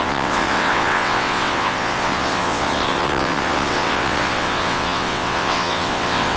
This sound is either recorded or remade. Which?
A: remade